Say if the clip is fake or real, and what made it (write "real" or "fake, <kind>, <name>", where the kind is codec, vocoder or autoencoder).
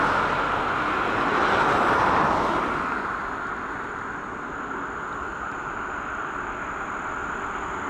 real